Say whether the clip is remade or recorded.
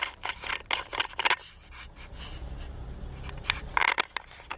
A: recorded